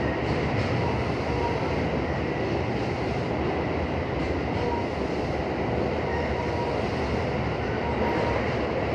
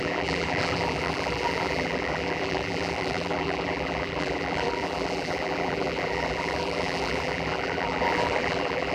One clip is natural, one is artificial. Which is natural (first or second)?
first